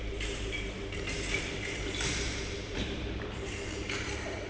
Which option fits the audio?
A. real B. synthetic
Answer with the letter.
B